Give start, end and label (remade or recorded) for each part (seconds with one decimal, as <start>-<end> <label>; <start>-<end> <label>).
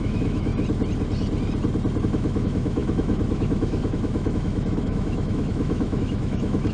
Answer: 0.0-0.5 remade; 0.5-2.0 recorded; 2.0-6.7 remade